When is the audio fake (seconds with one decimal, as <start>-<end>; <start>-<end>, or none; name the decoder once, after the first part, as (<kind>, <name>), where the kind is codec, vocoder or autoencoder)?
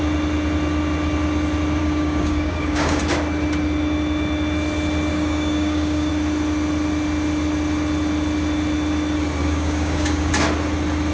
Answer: 1.8-3.0 (codec, DAC); 5.1-6.1; 9.4-10.3